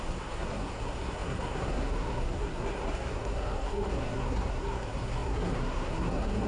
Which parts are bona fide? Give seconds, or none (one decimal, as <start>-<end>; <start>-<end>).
none